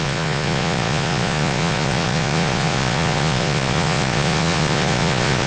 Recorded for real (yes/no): no